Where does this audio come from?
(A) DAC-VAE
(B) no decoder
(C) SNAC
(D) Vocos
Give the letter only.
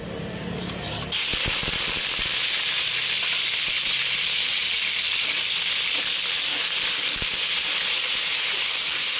B